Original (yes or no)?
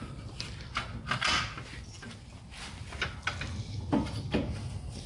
yes